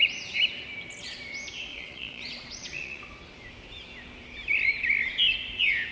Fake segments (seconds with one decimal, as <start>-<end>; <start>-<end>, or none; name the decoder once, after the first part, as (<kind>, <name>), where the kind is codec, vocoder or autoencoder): 1.7-3.0 (vocoder, Vocos)